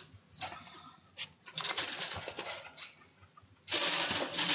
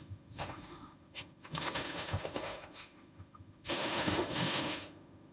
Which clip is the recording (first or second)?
first